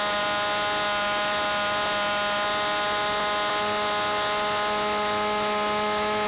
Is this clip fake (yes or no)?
no